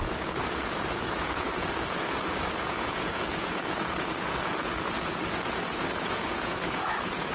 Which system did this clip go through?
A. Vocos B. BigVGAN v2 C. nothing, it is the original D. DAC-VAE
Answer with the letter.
A